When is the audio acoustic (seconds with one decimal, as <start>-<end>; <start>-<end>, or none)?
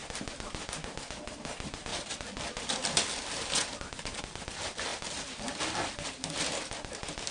0.0-7.3